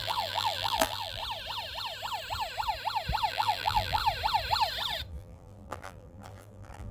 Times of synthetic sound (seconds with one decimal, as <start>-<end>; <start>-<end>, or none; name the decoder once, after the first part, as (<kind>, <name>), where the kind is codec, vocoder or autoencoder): 0.0-1.2 (vocoder, BigVGAN v2); 3.3-4.0; 5.1-6.9